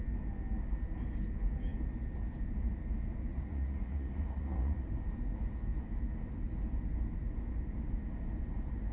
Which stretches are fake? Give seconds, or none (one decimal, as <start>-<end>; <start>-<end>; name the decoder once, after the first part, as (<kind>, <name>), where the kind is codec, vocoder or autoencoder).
3.3-4.9 (vocoder, Vocos)